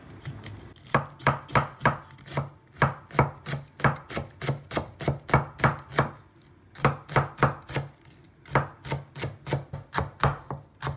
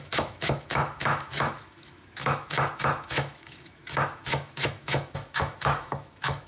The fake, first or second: second